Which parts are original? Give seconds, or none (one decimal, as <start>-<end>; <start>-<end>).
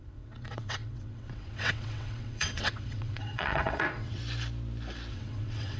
4.2-5.1